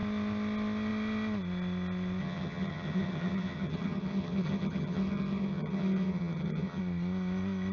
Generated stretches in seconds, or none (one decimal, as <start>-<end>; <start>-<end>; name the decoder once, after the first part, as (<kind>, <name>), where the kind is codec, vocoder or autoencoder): 2.2-6.8 (vocoder, HiFi-GAN)